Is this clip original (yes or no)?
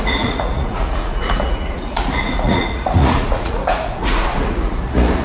no